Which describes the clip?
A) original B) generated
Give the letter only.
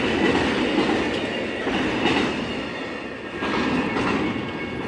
A